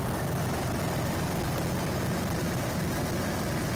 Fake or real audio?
real